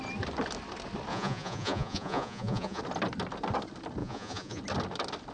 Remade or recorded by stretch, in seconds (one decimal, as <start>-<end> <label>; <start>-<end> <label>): 0.0-1.1 recorded; 1.1-2.8 remade; 2.8-4.0 recorded; 4.0-4.6 remade; 4.6-5.3 recorded